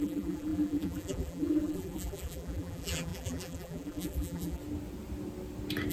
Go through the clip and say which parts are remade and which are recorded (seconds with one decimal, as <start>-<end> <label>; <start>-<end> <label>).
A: 0.0-4.6 remade; 4.6-5.9 recorded